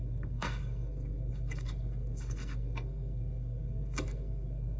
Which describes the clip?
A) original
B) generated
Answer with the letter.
B